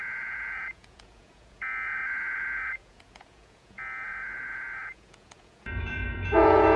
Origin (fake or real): fake